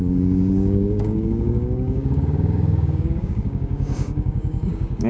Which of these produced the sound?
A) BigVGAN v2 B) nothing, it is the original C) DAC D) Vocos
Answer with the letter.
C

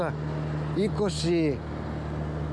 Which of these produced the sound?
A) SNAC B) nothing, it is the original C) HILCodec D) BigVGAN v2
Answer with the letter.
B